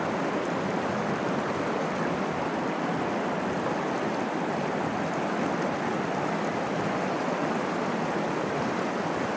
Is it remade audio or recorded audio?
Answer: recorded